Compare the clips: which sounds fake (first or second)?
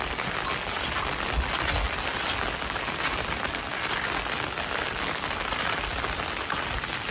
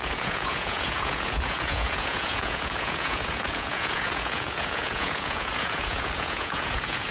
second